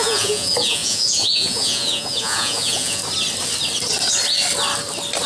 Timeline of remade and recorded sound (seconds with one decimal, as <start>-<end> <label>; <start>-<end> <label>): 0.0-3.0 remade; 3.0-5.3 recorded